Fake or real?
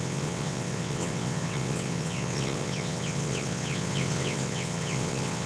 fake